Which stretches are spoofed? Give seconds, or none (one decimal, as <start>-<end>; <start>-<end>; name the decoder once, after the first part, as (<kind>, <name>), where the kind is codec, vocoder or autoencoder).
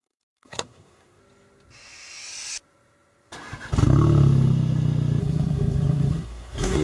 0.0-1.2 (codec, SNAC); 5.2-6.8